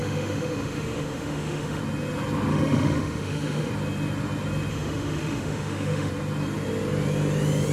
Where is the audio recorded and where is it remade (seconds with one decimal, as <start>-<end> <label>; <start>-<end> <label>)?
0.0-1.8 remade; 1.8-2.5 recorded; 2.5-3.7 remade; 3.7-4.7 recorded; 4.7-6.1 remade; 6.1-7.7 recorded